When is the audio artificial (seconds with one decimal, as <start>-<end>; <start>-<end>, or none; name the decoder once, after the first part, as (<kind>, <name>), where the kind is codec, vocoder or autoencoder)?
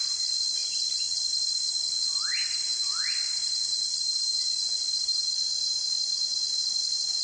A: none